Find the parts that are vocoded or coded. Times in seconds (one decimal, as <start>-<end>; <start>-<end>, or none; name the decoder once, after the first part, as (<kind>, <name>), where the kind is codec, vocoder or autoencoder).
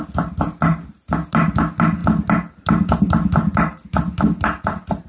none